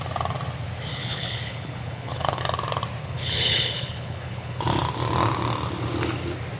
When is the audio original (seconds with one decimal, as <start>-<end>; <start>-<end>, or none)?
0.0-0.9; 2.4-3.0; 4.6-6.6